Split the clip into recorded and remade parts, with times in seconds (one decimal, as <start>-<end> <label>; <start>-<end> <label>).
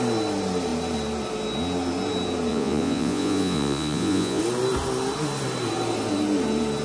0.0-2.5 recorded; 2.5-4.4 remade; 4.4-6.8 recorded